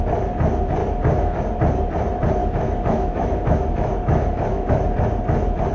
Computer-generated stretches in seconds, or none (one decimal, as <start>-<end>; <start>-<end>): 0.8-1.4; 2.4-4.7